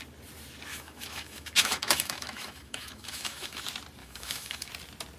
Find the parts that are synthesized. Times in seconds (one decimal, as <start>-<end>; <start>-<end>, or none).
0.7-3.6; 4.0-4.7